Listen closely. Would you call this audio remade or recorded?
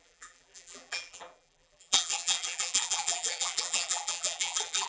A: remade